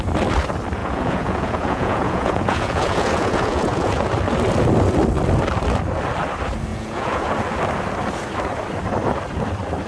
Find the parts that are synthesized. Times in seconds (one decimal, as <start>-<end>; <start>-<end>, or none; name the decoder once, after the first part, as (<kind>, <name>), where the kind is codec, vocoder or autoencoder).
0.8-4.1 (vocoder, Vocos); 6.7-7.3